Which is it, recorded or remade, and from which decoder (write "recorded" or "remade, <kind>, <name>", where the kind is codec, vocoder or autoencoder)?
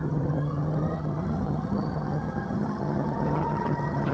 remade, vocoder, HiFi-GAN